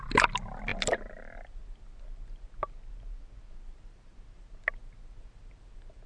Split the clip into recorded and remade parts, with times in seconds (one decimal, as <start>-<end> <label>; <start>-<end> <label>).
0.0-6.1 recorded